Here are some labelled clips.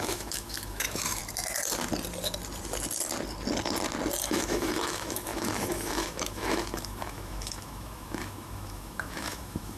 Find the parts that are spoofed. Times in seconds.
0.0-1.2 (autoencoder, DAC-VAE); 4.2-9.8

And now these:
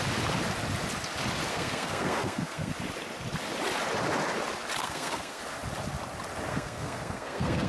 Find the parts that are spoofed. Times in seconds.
1.5-2.7 (codec, SNAC); 4.8-5.4; 6.5-7.7

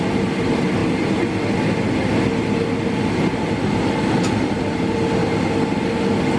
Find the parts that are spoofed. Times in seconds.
none